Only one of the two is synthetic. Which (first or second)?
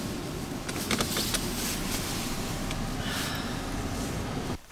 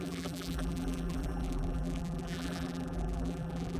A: second